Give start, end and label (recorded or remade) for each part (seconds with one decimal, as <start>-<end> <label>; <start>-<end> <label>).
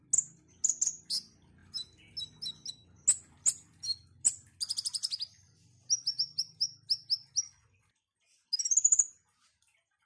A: 0.0-10.1 recorded